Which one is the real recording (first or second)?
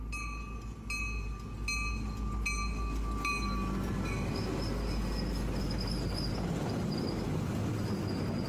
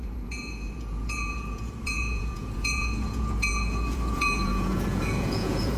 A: first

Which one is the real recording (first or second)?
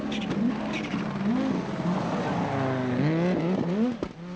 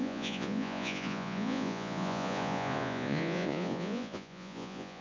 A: first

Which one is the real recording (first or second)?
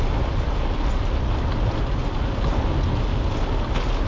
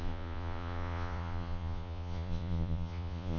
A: first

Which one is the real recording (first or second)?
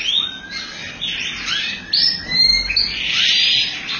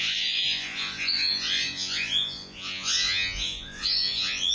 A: first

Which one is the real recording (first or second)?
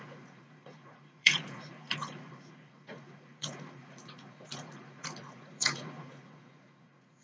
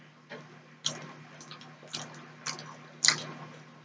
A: second